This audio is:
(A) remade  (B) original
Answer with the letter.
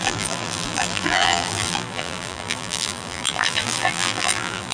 A